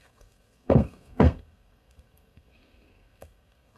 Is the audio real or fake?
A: fake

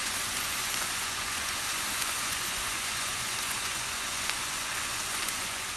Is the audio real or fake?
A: fake